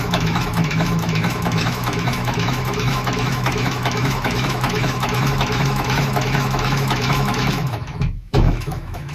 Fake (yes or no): yes